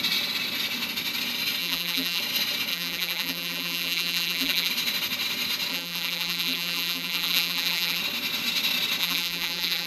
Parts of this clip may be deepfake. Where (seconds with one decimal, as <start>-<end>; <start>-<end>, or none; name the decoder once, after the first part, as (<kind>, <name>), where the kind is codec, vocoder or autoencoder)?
1.6-2.2 (vocoder, BigVGAN v2); 2.7-4.7; 5.7-8.0; 9.0-9.9